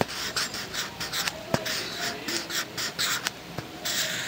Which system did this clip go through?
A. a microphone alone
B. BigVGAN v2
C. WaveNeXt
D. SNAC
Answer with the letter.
B